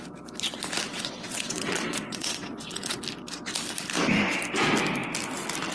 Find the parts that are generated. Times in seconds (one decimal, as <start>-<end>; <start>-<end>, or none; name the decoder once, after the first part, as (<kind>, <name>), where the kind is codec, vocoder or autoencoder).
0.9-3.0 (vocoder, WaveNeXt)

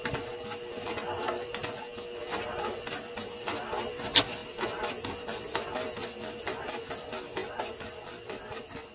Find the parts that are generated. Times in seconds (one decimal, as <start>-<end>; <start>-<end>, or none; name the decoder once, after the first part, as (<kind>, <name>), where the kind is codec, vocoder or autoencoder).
none

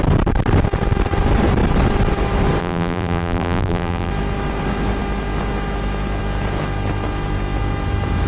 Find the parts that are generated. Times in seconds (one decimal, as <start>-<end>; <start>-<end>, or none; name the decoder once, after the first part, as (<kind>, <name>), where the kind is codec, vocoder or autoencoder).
2.6-4.1 (vocoder, BigVGAN v2)